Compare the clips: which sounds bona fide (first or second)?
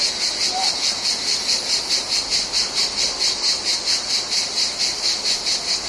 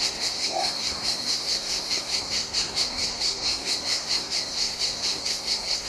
first